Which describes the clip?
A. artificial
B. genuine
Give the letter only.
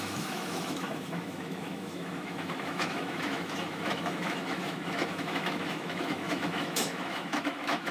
A